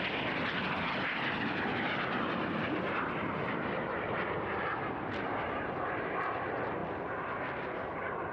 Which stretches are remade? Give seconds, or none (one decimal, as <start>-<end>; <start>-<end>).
none